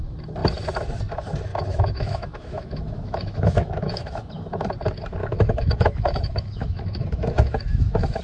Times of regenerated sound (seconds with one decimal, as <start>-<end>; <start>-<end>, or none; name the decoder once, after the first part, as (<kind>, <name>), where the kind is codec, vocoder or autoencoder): 1.5-4.3 (autoencoder, DAC-VAE); 5.2-8.2